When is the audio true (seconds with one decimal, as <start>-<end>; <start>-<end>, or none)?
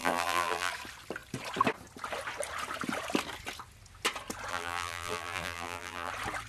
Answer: 0.7-4.5; 6.1-6.5